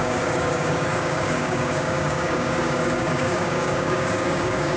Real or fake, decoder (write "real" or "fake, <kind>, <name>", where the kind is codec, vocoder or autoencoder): fake, codec, DAC